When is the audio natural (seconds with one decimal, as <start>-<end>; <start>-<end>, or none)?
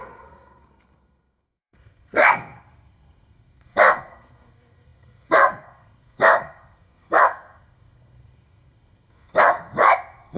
none